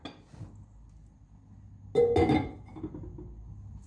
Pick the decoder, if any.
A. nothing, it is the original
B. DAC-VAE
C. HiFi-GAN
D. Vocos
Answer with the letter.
A